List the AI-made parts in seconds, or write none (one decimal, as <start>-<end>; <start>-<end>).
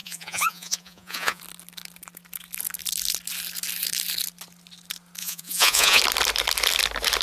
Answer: 0.0-1.4; 5.2-6.0